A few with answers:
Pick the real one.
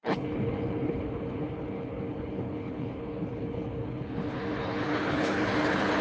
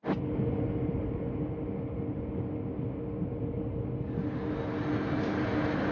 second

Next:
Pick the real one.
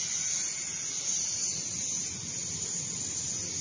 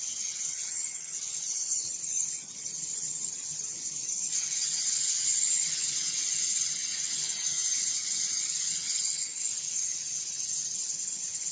first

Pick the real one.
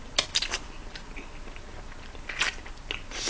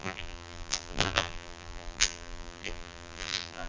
first